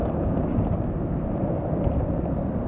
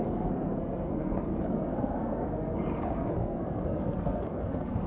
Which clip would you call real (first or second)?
first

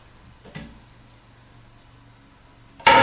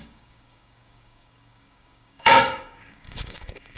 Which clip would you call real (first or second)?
first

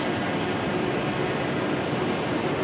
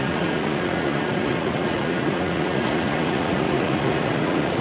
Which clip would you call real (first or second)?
first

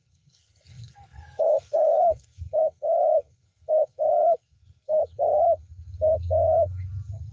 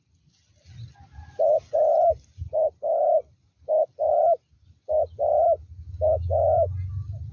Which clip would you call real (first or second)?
second